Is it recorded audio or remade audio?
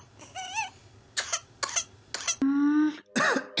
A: recorded